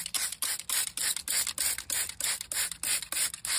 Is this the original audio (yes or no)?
yes